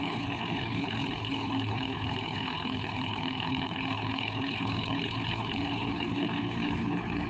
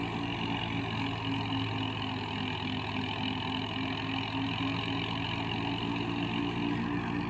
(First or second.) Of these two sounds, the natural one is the second